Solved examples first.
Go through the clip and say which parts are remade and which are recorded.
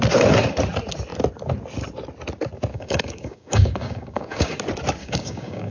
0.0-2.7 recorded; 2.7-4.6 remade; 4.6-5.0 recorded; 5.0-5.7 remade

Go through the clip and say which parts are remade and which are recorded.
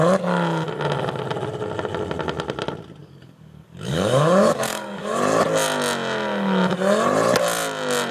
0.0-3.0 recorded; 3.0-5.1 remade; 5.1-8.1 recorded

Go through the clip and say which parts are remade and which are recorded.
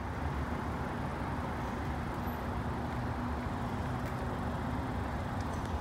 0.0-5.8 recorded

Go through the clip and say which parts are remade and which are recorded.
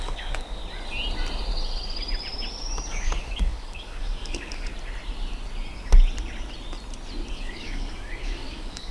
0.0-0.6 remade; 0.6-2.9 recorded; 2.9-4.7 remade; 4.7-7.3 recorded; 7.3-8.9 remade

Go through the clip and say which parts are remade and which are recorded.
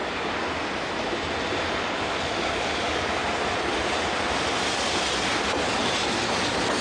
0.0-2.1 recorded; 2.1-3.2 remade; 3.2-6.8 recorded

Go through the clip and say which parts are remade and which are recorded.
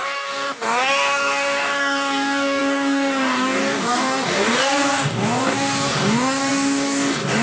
0.0-7.4 remade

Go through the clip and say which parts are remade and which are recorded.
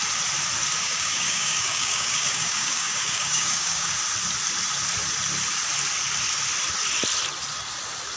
0.0-0.8 recorded; 0.8-3.9 remade; 3.9-8.2 recorded